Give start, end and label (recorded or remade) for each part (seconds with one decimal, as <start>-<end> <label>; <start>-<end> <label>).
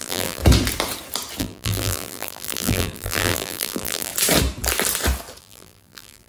0.0-0.4 remade; 0.4-1.4 recorded; 1.4-4.1 remade; 4.1-5.4 recorded; 5.4-6.3 remade